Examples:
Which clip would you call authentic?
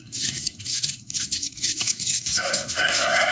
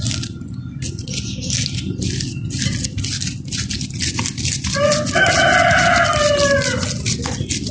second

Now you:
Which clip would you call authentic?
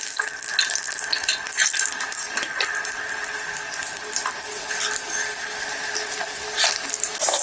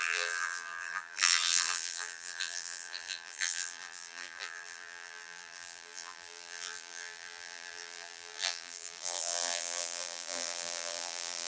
first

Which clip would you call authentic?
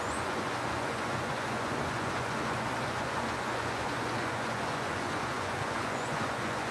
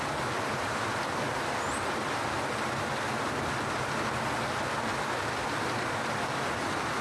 second